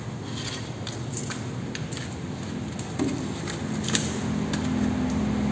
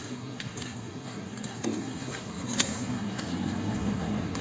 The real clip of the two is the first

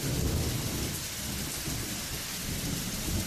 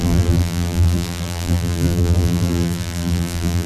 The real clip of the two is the first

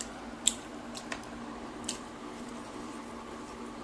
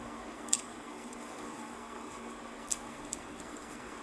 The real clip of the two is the first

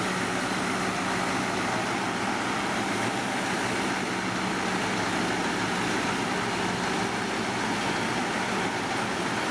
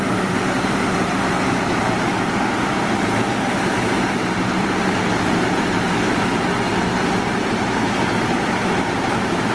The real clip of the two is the first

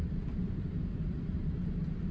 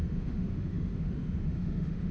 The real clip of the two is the first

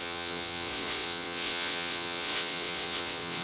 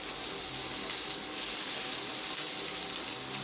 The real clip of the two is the second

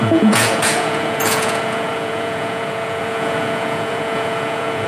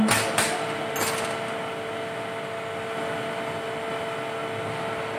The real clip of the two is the second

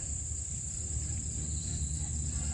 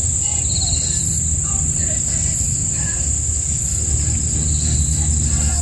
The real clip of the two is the second